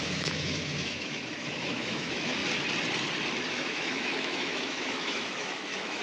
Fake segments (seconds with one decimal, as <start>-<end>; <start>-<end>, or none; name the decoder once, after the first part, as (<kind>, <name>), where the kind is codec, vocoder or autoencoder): 0.0-2.4 (autoencoder, DAC-VAE); 3.5-6.0